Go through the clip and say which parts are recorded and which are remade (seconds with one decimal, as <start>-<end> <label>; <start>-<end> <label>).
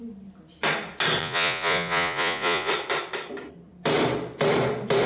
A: 0.0-1.2 recorded; 1.2-2.7 remade; 2.7-5.1 recorded